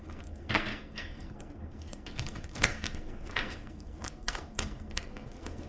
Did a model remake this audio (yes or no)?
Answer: yes